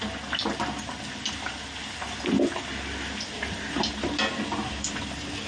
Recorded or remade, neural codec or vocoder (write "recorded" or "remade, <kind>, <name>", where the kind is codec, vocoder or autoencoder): recorded